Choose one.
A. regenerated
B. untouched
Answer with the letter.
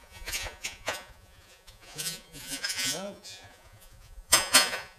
A